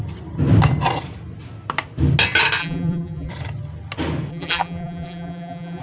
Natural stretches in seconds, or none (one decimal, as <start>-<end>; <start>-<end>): 0.0-2.6; 3.3-4.3